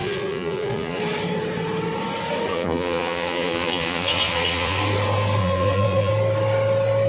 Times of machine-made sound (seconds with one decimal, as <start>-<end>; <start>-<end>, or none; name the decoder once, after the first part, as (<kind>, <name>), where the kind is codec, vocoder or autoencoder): 0.0-1.0 (vocoder, Vocos); 2.5-4.8; 5.4-6.1